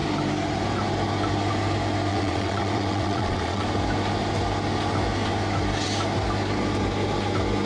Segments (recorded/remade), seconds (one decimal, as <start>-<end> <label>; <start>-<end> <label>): 0.0-2.1 recorded; 2.1-3.6 remade; 3.6-7.7 recorded